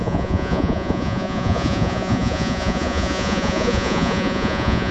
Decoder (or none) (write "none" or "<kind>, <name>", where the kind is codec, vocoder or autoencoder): vocoder, Vocos